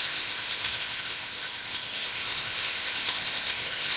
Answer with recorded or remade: remade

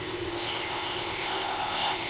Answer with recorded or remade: remade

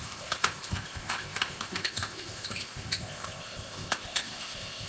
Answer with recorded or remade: remade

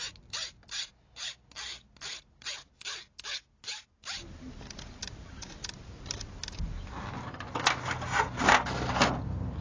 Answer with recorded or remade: recorded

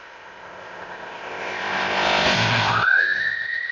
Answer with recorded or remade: remade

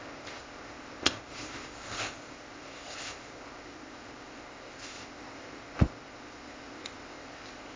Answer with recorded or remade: remade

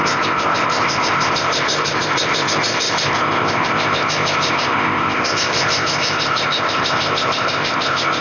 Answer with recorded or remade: remade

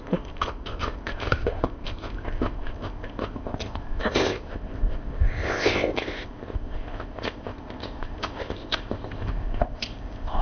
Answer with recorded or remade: remade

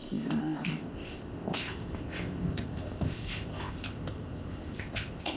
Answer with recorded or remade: remade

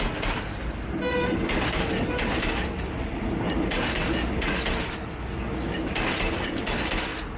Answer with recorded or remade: recorded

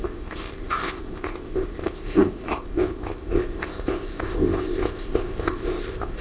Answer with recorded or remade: remade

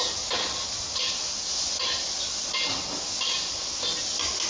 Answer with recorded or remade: recorded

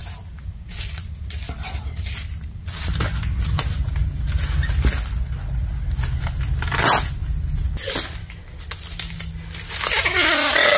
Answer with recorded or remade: recorded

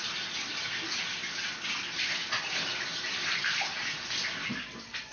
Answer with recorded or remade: recorded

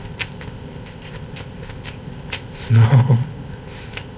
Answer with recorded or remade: remade